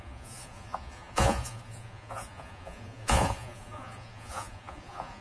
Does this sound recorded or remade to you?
remade